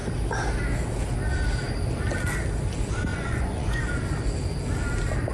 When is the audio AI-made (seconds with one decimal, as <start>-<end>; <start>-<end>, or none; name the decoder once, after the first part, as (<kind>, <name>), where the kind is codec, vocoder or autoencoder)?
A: 3.1-3.9 (vocoder, Vocos)